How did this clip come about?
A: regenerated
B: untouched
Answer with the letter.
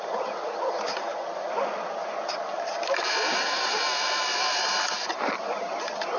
B